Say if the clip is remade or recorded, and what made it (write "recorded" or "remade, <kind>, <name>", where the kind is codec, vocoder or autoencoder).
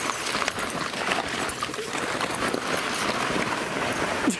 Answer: recorded